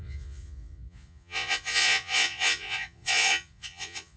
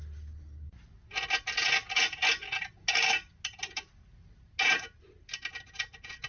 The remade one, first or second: first